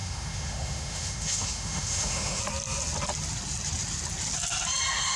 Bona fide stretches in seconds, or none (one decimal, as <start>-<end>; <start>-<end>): 2.4-5.2